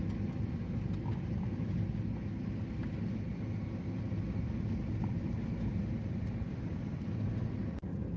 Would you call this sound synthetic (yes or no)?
no